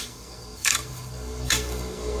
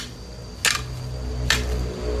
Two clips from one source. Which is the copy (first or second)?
first